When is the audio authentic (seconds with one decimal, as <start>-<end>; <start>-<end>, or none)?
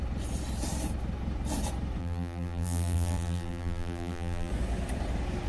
0.0-2.0; 4.5-5.5